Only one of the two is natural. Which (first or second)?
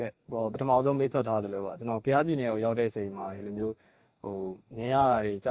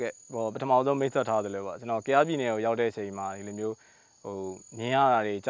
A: second